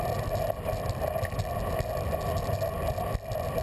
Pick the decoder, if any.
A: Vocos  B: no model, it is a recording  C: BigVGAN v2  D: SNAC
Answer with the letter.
B